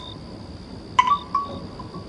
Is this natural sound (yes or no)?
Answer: yes